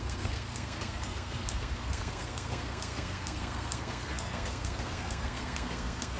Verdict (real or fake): fake